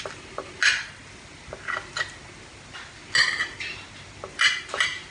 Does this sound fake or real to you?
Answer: real